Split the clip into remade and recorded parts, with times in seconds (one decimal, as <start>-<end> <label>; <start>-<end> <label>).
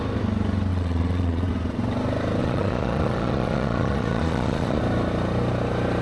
0.0-0.7 recorded; 0.7-1.5 remade; 1.5-2.4 recorded; 2.4-4.8 remade; 4.8-6.0 recorded